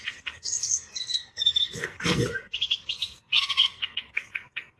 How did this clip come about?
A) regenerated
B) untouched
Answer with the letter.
A